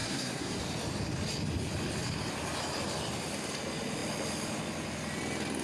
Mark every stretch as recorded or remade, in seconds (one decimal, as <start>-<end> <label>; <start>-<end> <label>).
0.0-0.6 remade; 0.6-5.6 recorded